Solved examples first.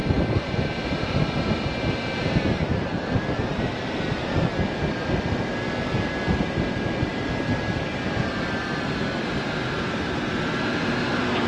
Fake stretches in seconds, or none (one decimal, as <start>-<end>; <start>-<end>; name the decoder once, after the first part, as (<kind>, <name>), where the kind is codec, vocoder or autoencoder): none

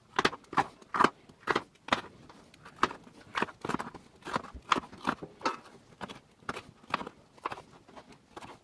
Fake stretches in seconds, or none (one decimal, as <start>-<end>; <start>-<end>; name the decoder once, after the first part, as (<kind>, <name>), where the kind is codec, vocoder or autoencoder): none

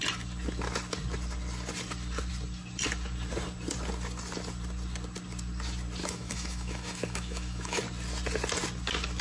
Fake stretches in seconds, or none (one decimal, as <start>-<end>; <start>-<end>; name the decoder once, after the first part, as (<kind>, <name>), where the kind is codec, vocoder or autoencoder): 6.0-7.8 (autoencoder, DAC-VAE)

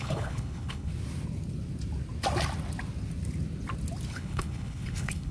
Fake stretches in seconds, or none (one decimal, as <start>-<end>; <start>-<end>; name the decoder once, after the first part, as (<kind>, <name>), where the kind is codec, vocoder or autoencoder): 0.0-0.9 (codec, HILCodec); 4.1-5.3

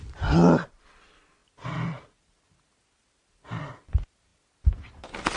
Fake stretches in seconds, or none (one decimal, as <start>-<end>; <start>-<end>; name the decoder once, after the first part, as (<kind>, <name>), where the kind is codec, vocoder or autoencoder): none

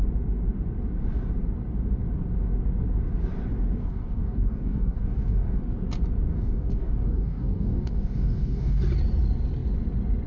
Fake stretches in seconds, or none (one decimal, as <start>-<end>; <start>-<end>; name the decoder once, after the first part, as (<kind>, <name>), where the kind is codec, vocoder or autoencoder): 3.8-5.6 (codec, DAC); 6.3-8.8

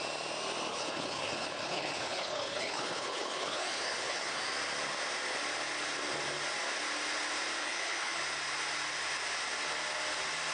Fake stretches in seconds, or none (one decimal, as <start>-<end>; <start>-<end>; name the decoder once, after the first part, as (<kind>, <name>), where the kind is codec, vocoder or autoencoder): 0.7-4.4 (codec, HILCodec); 7.6-8.2